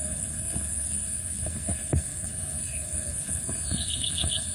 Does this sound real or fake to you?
fake